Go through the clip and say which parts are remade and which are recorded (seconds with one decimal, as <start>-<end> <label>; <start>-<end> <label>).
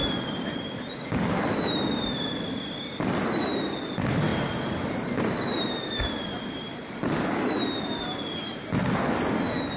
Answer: 0.0-9.8 recorded